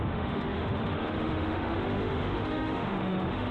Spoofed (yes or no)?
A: yes